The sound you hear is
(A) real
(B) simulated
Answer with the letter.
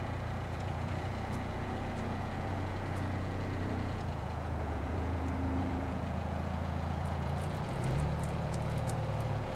B